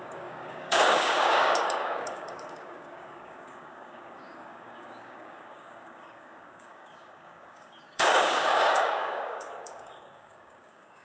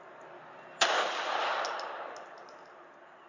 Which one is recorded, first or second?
second